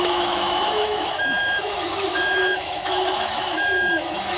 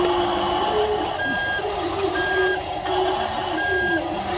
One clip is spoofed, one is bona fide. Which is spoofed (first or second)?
first